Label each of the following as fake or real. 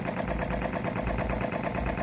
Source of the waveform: real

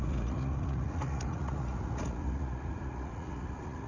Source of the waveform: fake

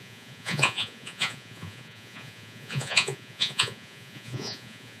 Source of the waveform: fake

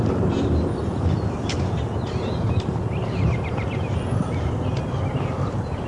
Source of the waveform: real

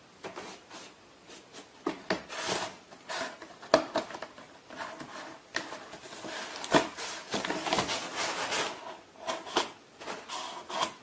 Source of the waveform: real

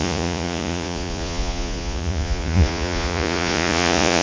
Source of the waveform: fake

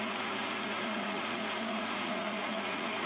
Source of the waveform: fake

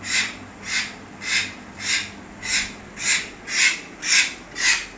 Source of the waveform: real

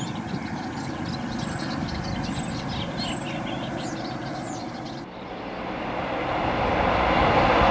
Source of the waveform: real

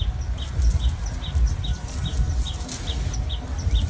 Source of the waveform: real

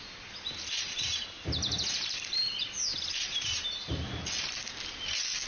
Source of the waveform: real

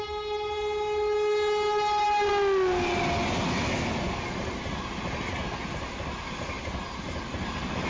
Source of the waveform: real